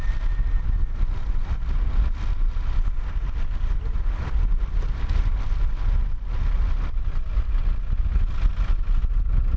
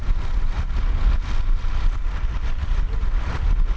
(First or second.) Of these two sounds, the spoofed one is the second